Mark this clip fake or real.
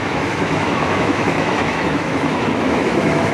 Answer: fake